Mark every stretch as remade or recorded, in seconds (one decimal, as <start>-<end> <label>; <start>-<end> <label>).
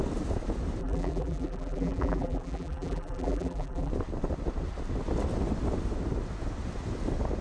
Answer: 0.0-0.8 recorded; 0.8-3.9 remade; 3.9-7.4 recorded